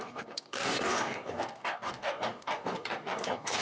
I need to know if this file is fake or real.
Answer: fake